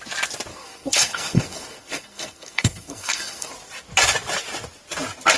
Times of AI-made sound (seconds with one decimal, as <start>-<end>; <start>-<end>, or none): 0.5-3.5